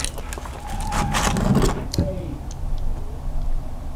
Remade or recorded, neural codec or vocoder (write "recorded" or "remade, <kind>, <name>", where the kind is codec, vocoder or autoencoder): recorded